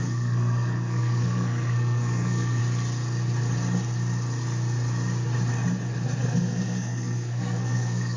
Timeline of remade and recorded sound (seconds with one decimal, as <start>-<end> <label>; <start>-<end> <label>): 0.0-2.6 remade; 2.6-6.2 recorded; 6.2-8.2 remade